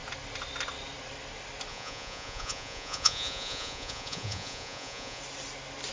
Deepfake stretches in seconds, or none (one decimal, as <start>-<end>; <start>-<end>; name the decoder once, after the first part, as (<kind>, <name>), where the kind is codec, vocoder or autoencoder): 1.7-5.2 (vocoder, Vocos)